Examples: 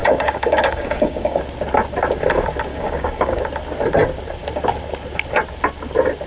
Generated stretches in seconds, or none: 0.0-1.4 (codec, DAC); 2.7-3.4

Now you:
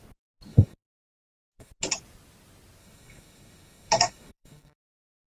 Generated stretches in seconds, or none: 0.5-1.7 (codec, DAC); 2.8-4.8

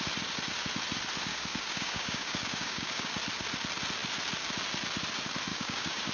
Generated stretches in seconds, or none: 1.3-3.1 (codec, DAC); 5.5-6.1

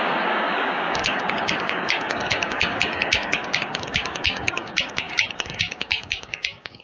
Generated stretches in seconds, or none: 0.0-6.8 (codec, DAC)

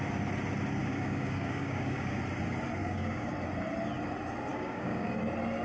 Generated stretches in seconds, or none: 0.8-2.2 (codec, DAC); 2.8-3.3; 4.5-5.1

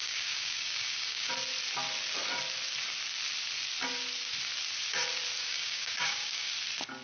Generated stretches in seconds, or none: 0.0-1.3 (codec, DAC); 5.4-6.5

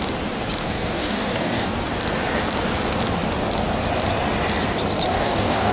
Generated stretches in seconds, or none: 0.6-1.7 (codec, DAC); 5.1-5.7

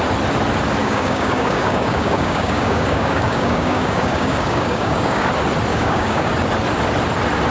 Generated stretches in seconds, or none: 0.8-5.3 (codec, DAC); 5.7-6.3